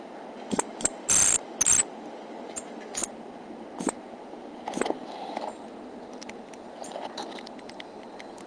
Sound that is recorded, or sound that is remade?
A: recorded